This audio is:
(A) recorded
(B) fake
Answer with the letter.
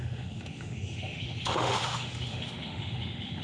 B